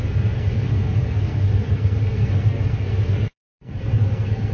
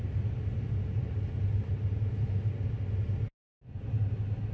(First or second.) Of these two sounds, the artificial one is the first